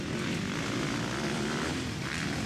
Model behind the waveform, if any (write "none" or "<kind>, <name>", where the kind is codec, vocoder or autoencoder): none